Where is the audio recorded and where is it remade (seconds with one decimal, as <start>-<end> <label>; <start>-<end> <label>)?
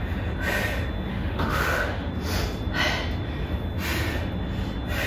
0.0-1.1 recorded; 1.1-2.1 remade; 2.1-5.1 recorded